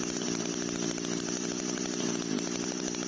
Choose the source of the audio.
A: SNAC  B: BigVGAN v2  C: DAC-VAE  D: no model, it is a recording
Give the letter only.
D